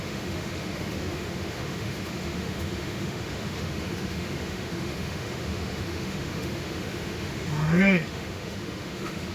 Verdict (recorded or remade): remade